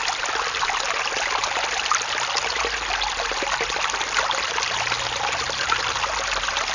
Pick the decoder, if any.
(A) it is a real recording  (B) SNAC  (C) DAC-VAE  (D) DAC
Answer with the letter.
A